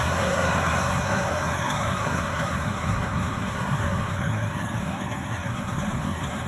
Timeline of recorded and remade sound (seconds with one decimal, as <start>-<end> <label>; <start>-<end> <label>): 0.0-6.5 remade